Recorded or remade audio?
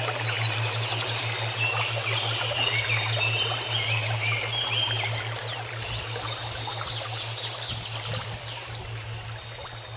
recorded